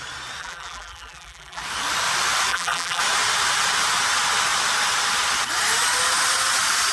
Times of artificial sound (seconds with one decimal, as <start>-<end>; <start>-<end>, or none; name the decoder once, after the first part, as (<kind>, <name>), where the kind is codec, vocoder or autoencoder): 0.4-1.6 (vocoder, BigVGAN v2); 2.5-3.0